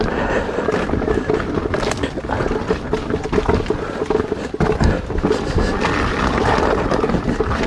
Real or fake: real